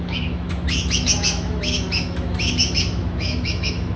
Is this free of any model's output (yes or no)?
no